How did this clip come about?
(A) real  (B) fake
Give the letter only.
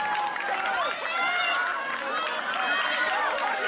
A